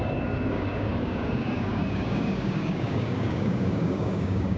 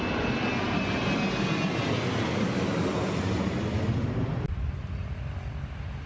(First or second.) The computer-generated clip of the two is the first